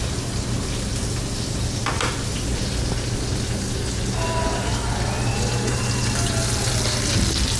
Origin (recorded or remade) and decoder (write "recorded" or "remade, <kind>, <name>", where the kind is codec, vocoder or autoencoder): recorded